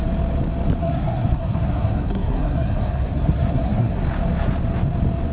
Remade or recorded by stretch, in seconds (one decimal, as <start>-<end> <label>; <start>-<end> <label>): 0.0-0.8 recorded; 0.8-4.0 remade; 4.0-5.3 recorded